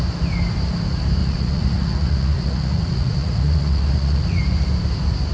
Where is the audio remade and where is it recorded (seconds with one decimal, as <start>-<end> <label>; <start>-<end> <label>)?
0.0-1.2 recorded; 1.2-4.4 remade; 4.4-5.3 recorded